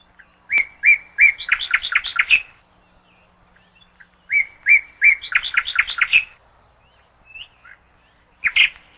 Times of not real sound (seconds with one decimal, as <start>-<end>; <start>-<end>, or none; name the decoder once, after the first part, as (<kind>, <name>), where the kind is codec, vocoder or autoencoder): none